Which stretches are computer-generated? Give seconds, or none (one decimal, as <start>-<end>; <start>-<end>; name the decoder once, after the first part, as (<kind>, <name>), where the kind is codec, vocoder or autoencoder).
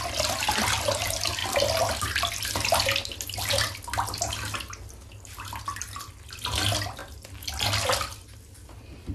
none